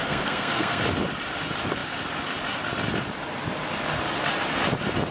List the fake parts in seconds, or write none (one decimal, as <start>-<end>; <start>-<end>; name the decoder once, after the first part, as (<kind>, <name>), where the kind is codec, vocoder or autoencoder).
0.0-0.8 (codec, SNAC)